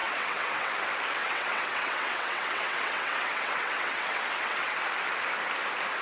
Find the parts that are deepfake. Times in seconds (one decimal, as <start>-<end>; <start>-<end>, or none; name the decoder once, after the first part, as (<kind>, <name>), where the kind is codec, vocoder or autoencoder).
0.0-0.7 (vocoder, WaveNeXt); 1.2-4.8